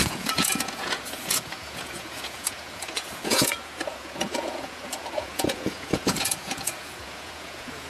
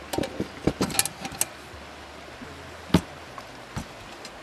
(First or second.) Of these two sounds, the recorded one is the second